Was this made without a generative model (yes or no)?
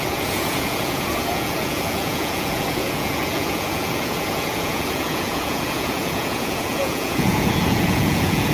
no